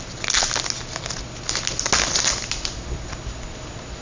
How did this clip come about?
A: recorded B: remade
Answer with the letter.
A